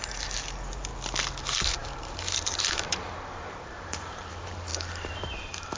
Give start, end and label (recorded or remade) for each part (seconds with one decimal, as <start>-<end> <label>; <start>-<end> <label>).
0.0-0.9 remade; 0.9-1.4 recorded; 1.4-5.8 remade

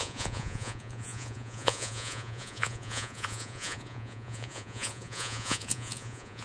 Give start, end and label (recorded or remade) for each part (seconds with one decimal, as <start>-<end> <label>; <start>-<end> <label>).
0.0-6.4 remade